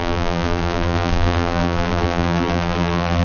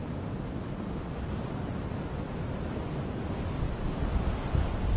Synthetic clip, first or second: first